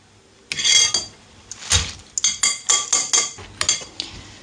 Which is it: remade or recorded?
recorded